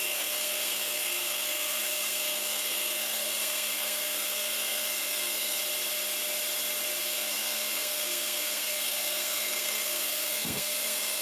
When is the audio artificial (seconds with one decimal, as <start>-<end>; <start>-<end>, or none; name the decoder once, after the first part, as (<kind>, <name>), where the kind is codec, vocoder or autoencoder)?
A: 0.0-5.6 (codec, SNAC); 7.0-11.2